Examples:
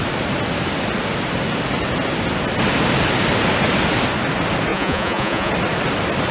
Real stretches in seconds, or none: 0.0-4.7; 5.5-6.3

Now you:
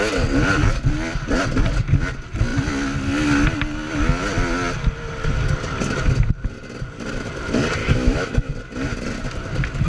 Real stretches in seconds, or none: 0.0-7.8; 8.5-9.9